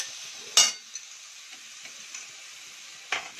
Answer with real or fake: real